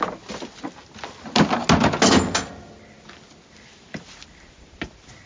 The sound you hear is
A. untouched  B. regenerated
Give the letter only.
A